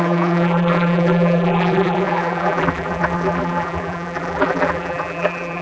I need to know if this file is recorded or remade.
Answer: remade